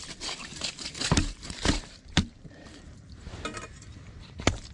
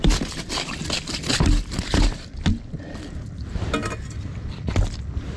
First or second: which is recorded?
second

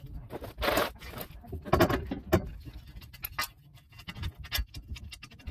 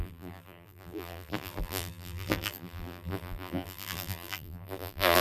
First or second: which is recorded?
first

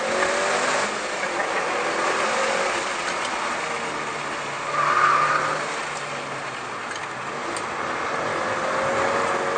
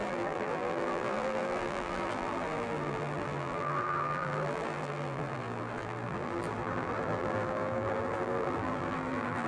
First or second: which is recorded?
first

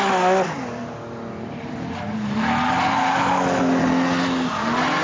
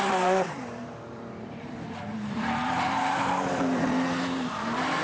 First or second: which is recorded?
first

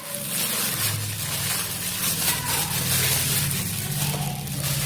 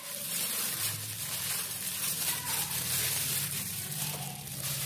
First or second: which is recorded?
first